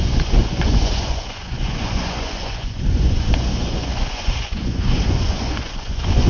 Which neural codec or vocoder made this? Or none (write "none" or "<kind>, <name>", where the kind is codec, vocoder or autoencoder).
vocoder, Vocos